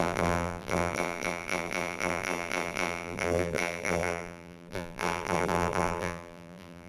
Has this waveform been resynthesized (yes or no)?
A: yes